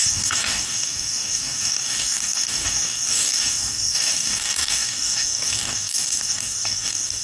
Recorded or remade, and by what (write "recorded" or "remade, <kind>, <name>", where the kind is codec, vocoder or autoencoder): remade, codec, DAC